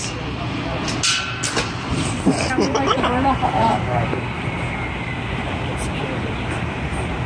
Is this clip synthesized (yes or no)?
no